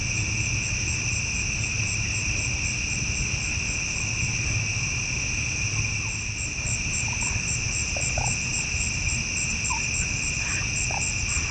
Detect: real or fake real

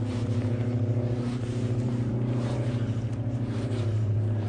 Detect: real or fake fake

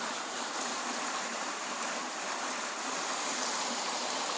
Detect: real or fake fake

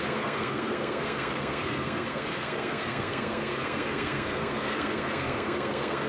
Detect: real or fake fake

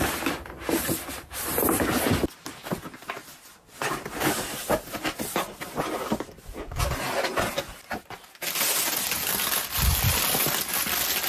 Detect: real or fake real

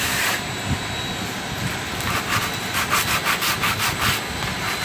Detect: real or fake real